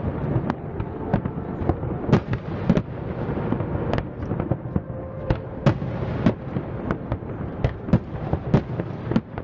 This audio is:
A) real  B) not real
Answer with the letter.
A